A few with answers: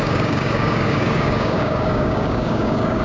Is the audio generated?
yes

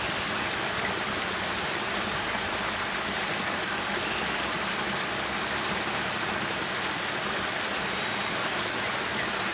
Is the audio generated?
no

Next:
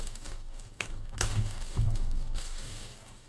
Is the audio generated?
yes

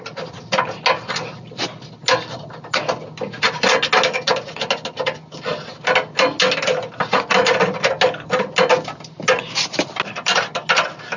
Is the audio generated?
no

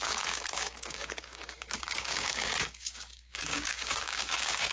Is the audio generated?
yes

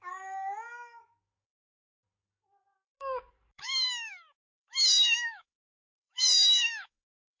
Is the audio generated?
yes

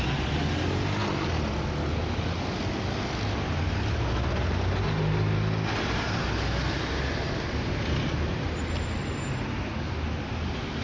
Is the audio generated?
no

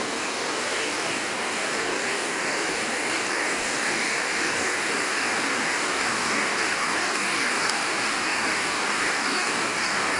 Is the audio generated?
yes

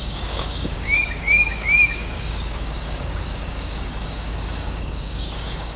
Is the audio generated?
yes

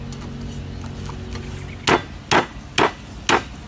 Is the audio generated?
no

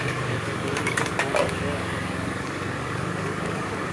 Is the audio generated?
yes